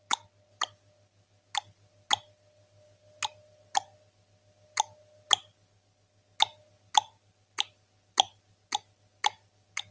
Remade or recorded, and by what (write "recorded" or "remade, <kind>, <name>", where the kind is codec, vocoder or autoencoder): recorded